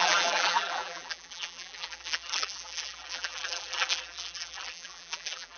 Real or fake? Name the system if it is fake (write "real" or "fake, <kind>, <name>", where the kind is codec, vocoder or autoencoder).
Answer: fake, vocoder, BigVGAN v2